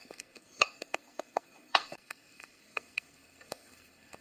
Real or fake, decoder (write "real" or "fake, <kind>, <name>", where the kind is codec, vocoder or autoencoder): fake, codec, SNAC